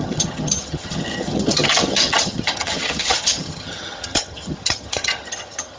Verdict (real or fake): fake